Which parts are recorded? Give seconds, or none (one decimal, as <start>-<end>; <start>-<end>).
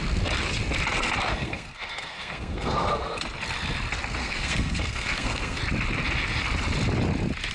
0.0-1.3; 3.2-4.2; 5.6-7.5